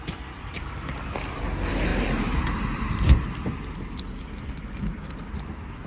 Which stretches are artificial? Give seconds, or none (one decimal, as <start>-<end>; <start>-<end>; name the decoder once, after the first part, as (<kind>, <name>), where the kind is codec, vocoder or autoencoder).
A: 0.4-1.4 (vocoder, BigVGAN v2); 1.9-5.4